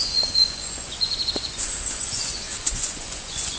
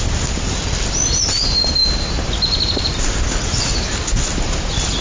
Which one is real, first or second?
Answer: second